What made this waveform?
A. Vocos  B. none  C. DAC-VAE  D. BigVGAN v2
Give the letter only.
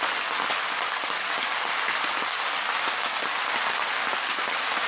B